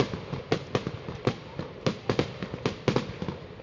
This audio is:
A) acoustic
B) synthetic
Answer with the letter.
A